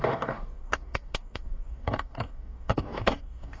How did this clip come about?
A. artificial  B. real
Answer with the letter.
A